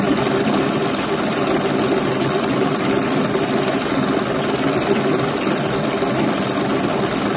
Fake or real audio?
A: real